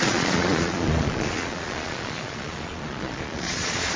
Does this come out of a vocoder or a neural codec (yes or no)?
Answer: yes